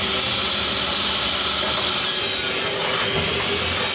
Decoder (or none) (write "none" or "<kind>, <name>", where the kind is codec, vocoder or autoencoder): none